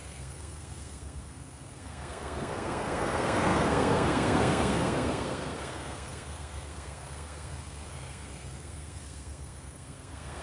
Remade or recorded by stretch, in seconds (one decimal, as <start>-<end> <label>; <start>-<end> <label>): 0.0-10.4 remade